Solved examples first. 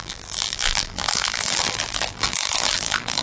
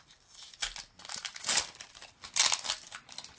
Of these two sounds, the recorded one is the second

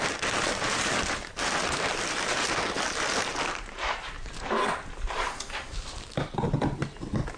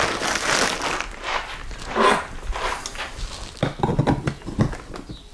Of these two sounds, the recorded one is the second